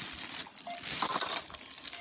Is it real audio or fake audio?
real